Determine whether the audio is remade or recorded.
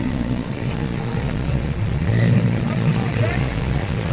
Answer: remade